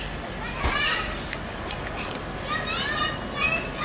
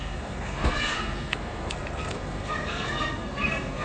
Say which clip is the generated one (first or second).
second